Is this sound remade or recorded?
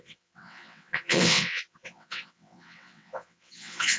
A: remade